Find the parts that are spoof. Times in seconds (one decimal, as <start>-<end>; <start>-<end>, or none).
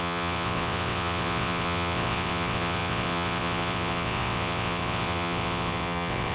0.0-6.3